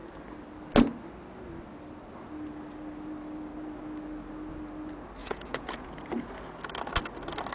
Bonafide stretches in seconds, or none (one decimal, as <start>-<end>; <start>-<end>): 0.0-5.2; 5.9-7.5